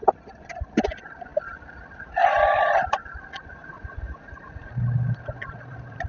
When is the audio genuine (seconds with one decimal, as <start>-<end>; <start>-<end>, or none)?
0.0-3.6; 4.7-6.1